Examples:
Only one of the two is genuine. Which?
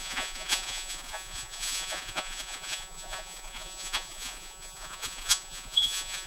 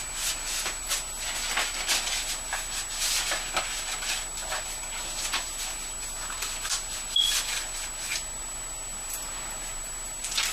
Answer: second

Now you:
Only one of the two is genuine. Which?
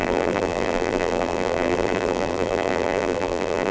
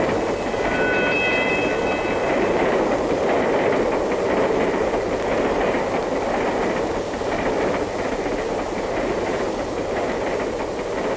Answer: second